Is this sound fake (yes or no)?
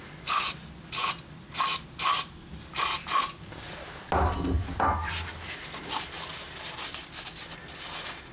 no